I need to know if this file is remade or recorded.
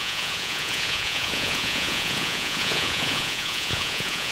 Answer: remade